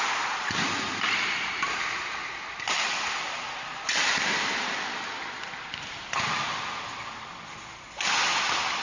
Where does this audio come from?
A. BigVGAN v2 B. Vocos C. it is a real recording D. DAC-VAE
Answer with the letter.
C